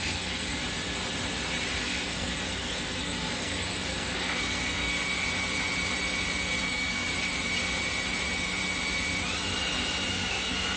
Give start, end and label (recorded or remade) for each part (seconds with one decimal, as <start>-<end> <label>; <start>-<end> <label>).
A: 0.0-0.6 remade; 0.6-1.8 recorded; 1.8-4.9 remade; 4.9-6.6 recorded; 6.6-7.1 remade; 7.1-10.1 recorded; 10.1-10.8 remade